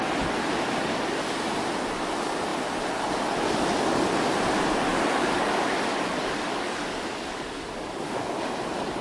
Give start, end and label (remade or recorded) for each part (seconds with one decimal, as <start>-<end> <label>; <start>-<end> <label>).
0.0-4.9 recorded; 4.9-8.4 remade; 8.4-9.0 recorded